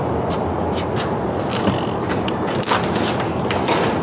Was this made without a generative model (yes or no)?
yes